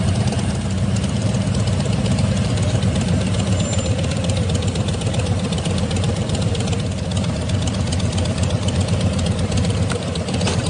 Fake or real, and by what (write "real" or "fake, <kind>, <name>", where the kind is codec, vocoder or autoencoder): fake, vocoder, BigVGAN v2